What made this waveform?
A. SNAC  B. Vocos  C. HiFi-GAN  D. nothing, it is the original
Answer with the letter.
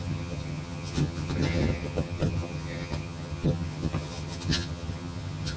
C